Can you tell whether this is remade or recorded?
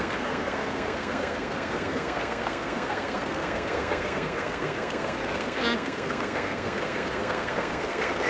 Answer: remade